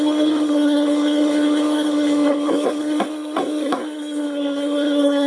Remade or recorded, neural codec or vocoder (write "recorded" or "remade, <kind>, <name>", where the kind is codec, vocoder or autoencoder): remade, codec, SNAC